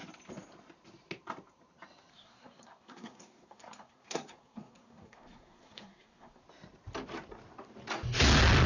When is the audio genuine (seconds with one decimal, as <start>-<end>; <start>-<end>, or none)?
0.0-2.1; 6.4-8.7